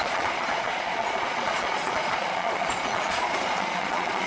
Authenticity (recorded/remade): remade